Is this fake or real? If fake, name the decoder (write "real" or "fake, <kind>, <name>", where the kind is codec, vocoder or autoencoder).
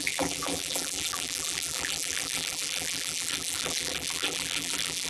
fake, vocoder, BigVGAN v2